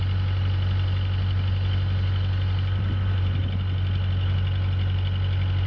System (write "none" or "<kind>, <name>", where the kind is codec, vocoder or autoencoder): none